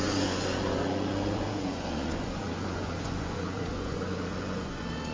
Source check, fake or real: fake